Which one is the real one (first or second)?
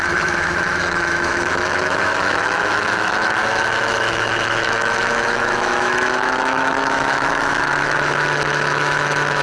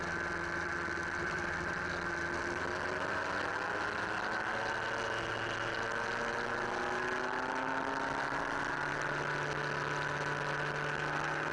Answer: second